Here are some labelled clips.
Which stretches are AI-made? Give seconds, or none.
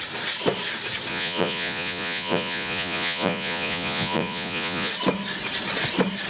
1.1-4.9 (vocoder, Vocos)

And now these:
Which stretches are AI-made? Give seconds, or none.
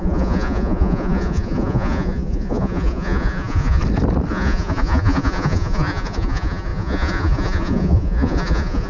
0.0-3.8 (vocoder, Vocos); 4.3-8.9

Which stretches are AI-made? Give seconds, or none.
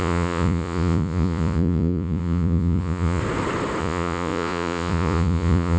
0.0-3.2 (vocoder, Vocos); 3.8-5.8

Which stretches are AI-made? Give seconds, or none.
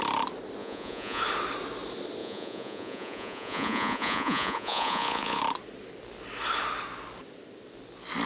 0.6-1.2 (vocoder, Vocos); 2.2-5.4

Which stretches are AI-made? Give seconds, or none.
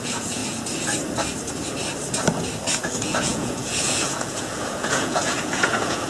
0.0-0.4 (vocoder, Vocos); 2.8-6.1